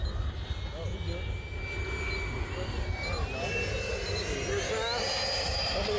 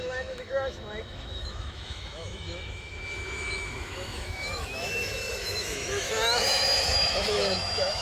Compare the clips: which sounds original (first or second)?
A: first